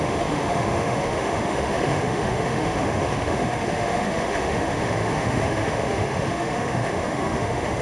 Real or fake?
fake